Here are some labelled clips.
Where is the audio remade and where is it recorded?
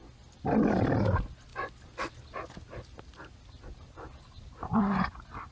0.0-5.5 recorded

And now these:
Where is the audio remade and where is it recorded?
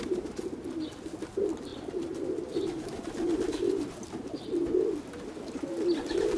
0.0-6.4 recorded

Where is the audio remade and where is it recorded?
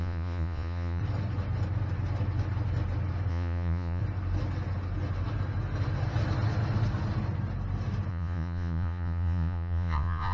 0.0-1.0 remade; 1.0-3.3 recorded; 3.3-4.0 remade; 4.0-8.1 recorded; 8.1-10.3 remade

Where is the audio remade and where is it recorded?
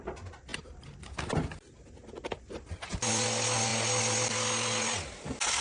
0.0-5.6 recorded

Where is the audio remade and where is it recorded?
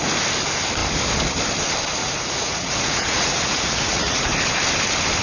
0.0-2.0 recorded; 2.0-4.2 remade; 4.2-5.2 recorded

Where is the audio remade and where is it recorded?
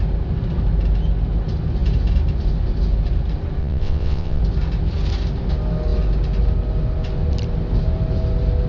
0.0-3.6 recorded; 3.6-4.4 remade; 4.4-8.7 recorded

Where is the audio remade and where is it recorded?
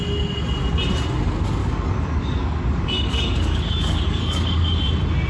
0.0-1.6 recorded; 1.6-4.8 remade; 4.8-5.3 recorded